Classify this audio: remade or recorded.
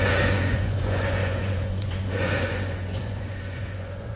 remade